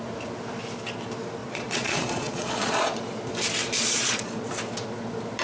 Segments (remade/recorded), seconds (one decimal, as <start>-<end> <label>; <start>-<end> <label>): 0.0-1.4 recorded; 1.4-3.0 remade; 3.0-3.6 recorded; 3.6-4.3 remade; 4.3-5.4 recorded